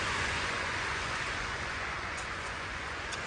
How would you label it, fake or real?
fake